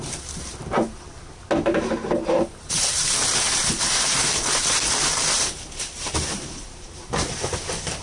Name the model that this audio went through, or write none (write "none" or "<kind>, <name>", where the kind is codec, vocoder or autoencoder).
vocoder, BigVGAN v2